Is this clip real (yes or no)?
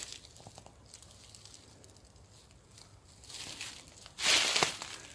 yes